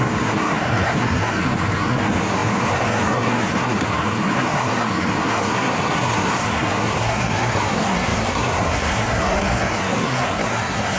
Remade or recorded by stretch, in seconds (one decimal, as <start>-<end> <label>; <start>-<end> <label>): 0.0-11.0 remade